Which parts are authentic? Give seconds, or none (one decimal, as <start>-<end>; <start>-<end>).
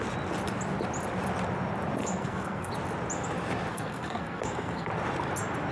0.0-2.0; 2.7-3.7; 4.9-5.7